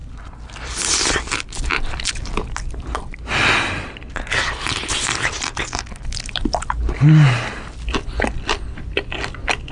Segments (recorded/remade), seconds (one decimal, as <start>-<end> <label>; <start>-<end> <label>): 0.0-2.1 remade; 2.1-9.7 recorded